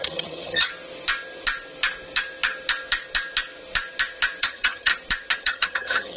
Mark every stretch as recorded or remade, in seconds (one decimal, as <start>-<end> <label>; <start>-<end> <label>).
0.0-0.7 remade; 0.7-4.4 recorded; 4.4-4.9 remade; 4.9-5.4 recorded; 5.4-6.2 remade